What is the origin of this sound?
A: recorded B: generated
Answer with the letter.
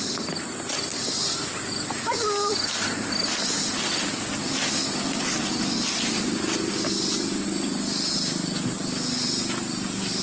A